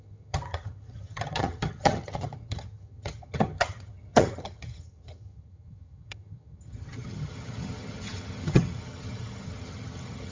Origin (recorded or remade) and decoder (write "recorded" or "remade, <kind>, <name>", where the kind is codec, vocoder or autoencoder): remade, vocoder, HiFi-GAN